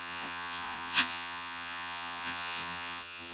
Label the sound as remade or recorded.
remade